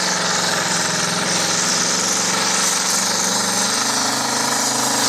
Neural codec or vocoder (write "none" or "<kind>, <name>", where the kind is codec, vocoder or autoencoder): none